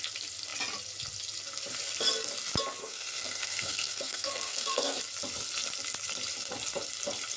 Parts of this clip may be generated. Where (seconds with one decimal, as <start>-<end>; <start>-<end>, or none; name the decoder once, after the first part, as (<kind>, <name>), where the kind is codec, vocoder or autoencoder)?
2.8-5.0 (codec, SNAC)